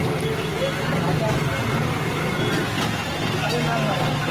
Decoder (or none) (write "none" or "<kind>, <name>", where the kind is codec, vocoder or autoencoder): none